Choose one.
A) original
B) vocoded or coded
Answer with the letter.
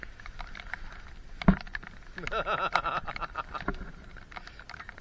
A